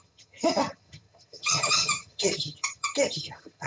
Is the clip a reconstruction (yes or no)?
yes